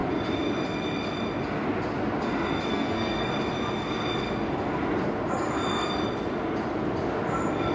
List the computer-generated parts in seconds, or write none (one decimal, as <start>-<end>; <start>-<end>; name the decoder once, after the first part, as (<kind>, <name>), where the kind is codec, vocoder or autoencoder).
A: 2.7-3.3 (codec, SNAC)